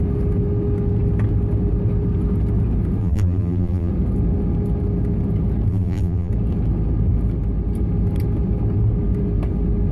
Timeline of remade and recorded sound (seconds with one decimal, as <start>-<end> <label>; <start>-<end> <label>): 0.0-3.0 recorded; 3.0-3.9 remade; 3.9-5.7 recorded; 5.7-6.3 remade; 6.3-9.9 recorded